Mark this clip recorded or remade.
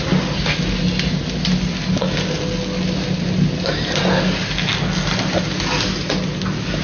recorded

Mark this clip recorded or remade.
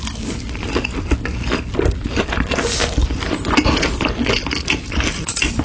recorded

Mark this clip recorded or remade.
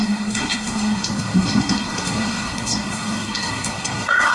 remade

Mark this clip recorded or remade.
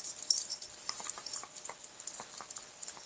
recorded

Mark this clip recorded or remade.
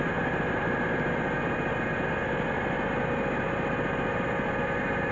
recorded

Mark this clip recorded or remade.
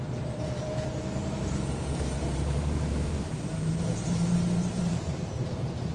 remade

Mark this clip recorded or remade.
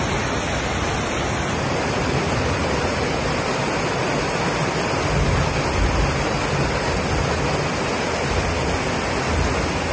recorded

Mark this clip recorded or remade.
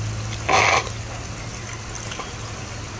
recorded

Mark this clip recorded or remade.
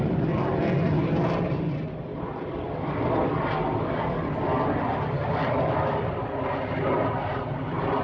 recorded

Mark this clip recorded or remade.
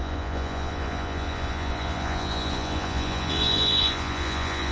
remade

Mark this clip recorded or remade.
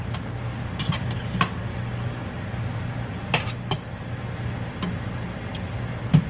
recorded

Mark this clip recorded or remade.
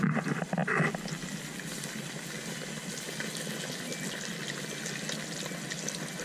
recorded